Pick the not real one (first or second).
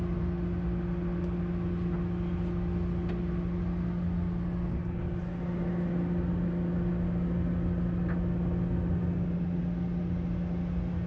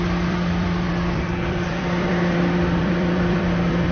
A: second